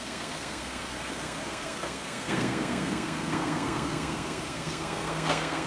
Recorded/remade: remade